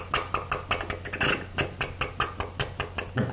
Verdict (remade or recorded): recorded